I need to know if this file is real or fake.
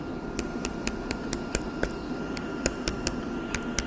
real